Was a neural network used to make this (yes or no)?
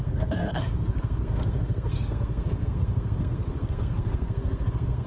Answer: yes